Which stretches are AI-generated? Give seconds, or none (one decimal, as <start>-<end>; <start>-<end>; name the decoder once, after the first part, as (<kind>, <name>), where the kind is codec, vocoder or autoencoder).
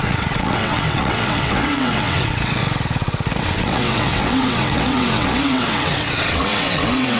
0.0-2.6 (vocoder, WaveNeXt); 3.4-7.2